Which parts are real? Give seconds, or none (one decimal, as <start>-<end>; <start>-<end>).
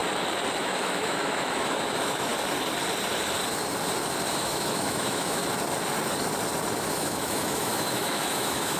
0.0-0.6; 2.3-4.3; 5.4-6.8